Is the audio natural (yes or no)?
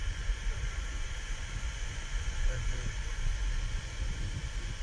no